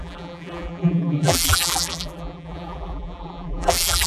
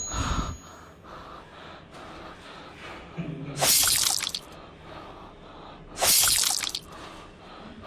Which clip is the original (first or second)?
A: second